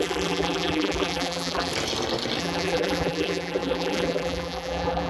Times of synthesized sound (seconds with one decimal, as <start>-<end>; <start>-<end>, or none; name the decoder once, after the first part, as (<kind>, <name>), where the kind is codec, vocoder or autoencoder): 0.0-1.7 (vocoder, BigVGAN v2); 2.4-5.1

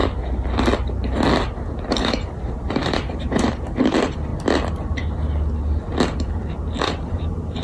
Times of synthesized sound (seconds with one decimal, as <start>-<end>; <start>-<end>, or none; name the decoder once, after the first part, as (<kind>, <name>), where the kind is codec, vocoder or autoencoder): 1.9-4.3 (vocoder, BigVGAN v2); 6.8-7.6

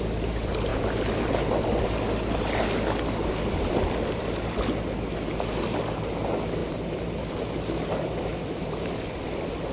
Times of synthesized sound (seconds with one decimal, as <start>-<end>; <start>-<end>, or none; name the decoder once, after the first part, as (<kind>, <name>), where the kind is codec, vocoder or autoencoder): 6.6-8.9 (vocoder, BigVGAN v2)

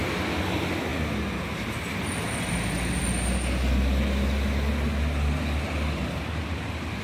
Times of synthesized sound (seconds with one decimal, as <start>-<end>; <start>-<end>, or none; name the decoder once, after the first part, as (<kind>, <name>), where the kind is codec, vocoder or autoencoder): none

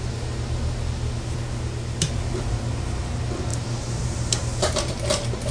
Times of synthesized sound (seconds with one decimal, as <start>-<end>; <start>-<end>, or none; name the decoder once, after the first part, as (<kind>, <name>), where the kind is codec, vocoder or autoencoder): 3.5-4.9 (vocoder, BigVGAN v2)

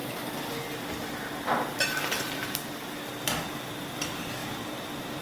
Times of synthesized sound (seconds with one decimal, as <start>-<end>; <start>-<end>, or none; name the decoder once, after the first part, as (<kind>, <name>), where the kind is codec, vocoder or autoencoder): 4.4-5.2 (vocoder, BigVGAN v2)